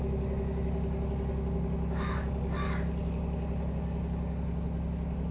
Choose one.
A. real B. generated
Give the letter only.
A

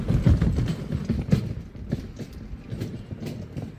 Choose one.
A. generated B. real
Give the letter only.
B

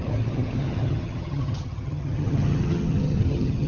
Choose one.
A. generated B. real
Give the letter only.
A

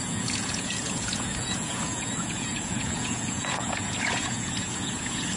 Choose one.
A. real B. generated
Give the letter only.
B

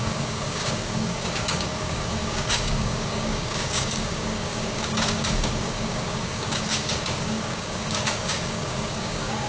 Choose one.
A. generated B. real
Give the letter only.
A